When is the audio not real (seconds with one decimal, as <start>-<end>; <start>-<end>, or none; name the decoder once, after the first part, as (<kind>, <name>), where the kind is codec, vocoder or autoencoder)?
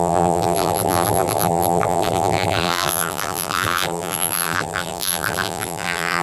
0.0-6.2 (vocoder, BigVGAN v2)